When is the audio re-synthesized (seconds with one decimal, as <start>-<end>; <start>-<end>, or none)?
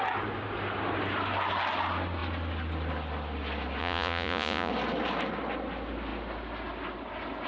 3.8-4.7